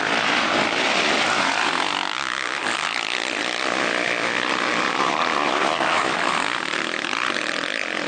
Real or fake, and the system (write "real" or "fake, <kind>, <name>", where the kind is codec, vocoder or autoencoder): real